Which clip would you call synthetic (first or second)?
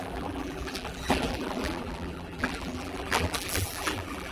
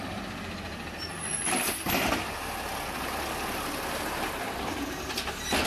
first